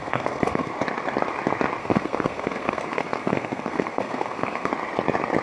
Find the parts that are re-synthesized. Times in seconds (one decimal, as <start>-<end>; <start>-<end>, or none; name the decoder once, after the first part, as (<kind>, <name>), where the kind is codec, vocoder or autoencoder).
0.0-0.7 (codec, SNAC); 1.8-4.7